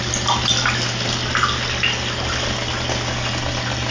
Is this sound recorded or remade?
recorded